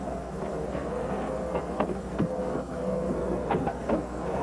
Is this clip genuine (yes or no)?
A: no